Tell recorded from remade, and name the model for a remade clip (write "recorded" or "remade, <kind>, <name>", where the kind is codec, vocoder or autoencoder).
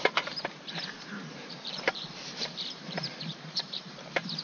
remade, vocoder, BigVGAN v2